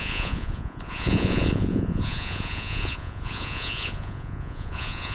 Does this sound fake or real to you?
fake